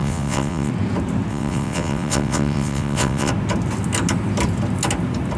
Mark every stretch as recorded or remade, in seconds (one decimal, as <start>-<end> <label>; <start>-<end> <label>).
0.0-0.7 remade; 0.7-1.3 recorded; 1.3-3.3 remade; 3.3-5.4 recorded